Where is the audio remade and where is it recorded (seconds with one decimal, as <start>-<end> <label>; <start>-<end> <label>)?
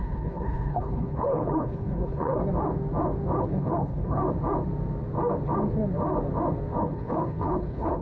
0.0-2.4 remade; 2.4-3.4 recorded; 3.4-4.2 remade; 4.2-6.8 recorded; 6.8-8.0 remade